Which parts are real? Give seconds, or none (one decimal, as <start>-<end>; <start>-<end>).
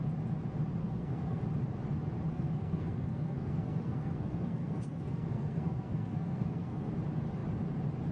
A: 0.0-0.8; 1.4-2.3; 6.9-8.1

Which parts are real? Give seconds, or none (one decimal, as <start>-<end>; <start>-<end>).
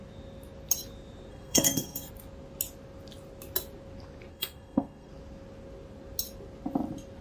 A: 0.0-1.3; 2.1-4.3; 5.1-7.2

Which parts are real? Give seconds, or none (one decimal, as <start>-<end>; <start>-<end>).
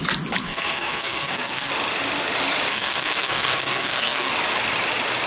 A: 0.0-0.4; 1.7-2.7; 4.3-5.3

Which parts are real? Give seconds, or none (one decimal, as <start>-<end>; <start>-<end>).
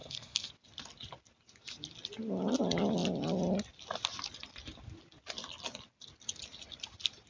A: 0.5-7.3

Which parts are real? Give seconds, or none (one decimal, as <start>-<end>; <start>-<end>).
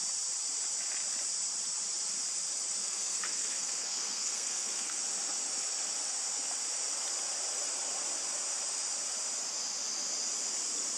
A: 0.0-2.8; 5.0-11.0